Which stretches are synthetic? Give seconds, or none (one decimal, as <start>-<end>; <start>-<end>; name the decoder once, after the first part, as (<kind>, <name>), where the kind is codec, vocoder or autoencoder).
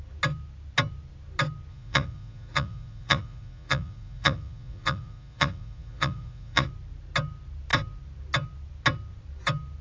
1.7-6.7 (vocoder, Vocos)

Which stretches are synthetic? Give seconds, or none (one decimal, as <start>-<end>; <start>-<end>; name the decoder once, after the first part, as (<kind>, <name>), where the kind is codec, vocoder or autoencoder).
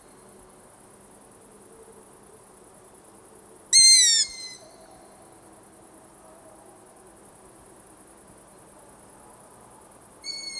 none